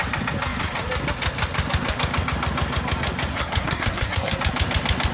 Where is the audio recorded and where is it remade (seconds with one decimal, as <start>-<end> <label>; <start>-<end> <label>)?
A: 0.0-3.3 recorded; 3.3-4.4 remade; 4.4-5.1 recorded